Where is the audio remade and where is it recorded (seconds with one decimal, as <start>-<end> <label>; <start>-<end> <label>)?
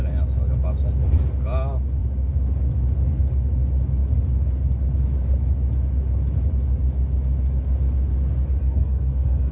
0.0-8.6 recorded; 8.6-9.5 remade